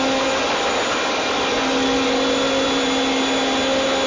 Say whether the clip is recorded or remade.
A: recorded